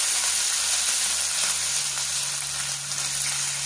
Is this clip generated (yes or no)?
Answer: no